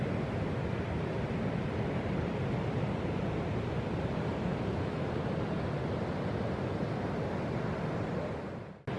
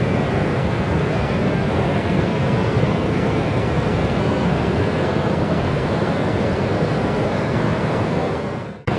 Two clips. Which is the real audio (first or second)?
first